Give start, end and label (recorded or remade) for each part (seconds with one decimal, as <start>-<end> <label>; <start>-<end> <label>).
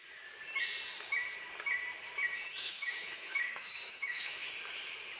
0.0-2.6 recorded; 2.6-4.5 remade; 4.5-5.2 recorded